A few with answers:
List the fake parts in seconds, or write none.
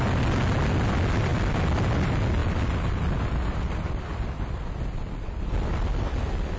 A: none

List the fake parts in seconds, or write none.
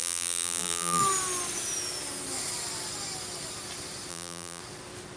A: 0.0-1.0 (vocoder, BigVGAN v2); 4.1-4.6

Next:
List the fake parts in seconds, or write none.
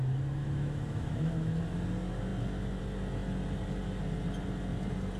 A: 0.4-1.6 (autoencoder, DAC-VAE)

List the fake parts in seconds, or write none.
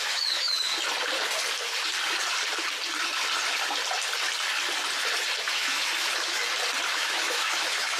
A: 0.0-0.7 (autoencoder, DAC-VAE); 5.5-6.4; 6.9-8.0